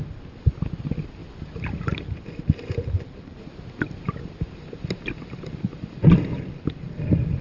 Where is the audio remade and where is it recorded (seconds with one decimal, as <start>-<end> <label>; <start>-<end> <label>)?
0.0-1.2 remade; 1.2-5.6 recorded; 5.6-7.4 remade